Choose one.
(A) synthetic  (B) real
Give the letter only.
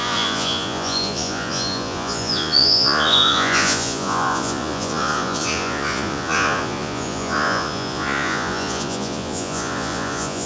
A